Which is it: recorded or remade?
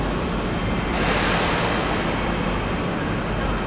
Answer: recorded